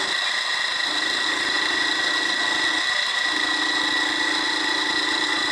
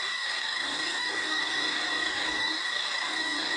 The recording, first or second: first